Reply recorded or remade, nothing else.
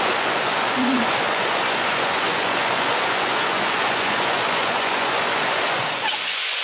remade